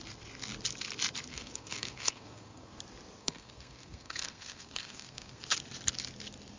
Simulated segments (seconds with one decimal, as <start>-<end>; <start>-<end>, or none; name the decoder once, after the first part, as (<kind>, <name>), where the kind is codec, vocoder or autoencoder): 1.3-2.8 (codec, SNAC); 3.2-5.4